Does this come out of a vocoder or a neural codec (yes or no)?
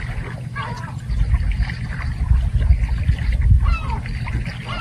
no